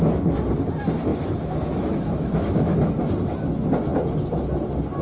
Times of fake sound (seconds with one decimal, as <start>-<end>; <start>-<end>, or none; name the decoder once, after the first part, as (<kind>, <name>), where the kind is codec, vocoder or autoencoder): 1.1-2.9 (autoencoder, DAC-VAE)

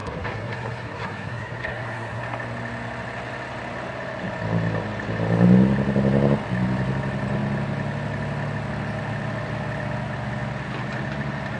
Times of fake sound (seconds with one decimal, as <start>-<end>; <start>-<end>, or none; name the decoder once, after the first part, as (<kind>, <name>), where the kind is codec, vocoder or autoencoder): 0.0-2.2 (codec, SNAC)

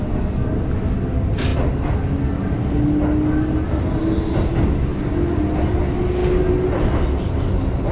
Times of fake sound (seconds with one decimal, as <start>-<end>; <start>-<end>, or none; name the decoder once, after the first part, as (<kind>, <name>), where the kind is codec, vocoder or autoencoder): none